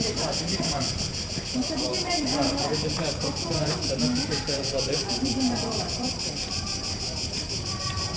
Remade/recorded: remade